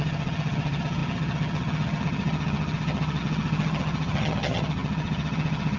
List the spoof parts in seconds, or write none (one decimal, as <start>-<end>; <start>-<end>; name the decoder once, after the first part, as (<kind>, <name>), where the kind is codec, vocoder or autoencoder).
0.0-5.8 (vocoder, HiFi-GAN)